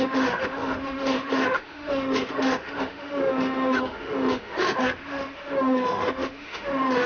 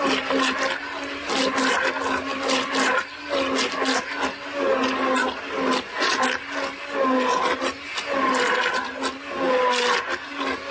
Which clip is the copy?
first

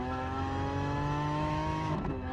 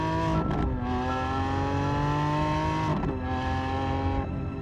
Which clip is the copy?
first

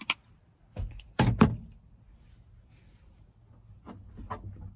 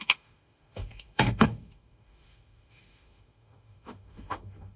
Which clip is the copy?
second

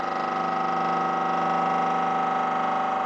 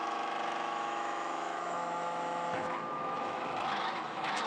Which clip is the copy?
second